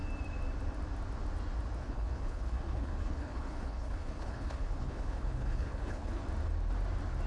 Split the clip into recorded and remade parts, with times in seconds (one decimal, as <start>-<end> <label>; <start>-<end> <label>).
0.0-1.8 recorded; 1.8-6.2 remade; 6.2-7.3 recorded